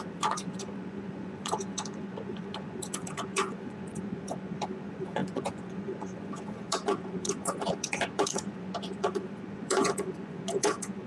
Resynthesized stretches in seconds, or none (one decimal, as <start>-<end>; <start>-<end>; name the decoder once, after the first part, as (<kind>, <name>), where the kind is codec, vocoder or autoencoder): 0.0-11.1 (vocoder, Vocos)